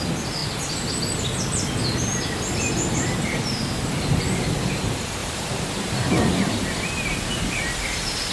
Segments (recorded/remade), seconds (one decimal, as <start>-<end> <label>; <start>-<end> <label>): 0.0-5.2 recorded; 5.2-6.2 remade; 6.2-8.3 recorded